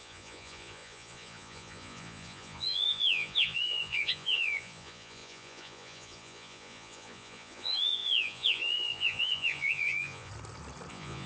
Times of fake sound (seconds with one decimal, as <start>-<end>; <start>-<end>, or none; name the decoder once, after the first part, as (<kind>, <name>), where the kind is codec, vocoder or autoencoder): 0.0-10.3 (vocoder, Vocos); 10.9-11.3